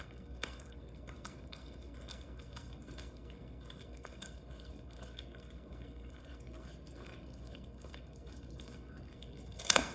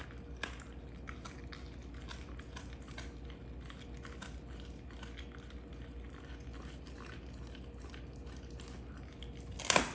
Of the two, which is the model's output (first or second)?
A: first